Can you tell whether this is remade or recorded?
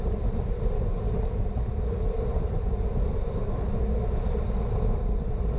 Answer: remade